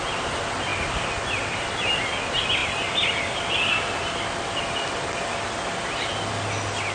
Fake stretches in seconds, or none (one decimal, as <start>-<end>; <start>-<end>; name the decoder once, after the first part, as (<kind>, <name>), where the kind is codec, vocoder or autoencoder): none